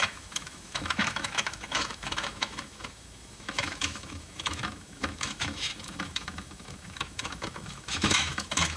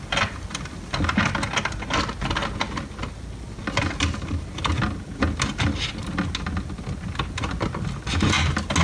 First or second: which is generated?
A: first